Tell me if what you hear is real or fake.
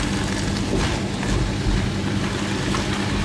real